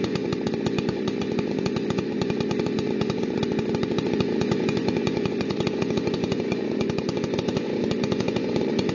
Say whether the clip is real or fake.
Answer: fake